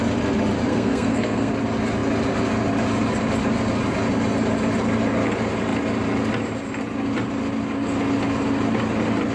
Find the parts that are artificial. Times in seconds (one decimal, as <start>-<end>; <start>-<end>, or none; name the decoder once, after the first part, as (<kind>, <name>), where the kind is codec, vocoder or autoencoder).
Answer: 0.7-1.5 (codec, SNAC)